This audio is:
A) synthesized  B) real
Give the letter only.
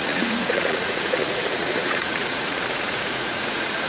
A